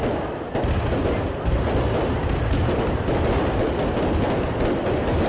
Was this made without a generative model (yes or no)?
yes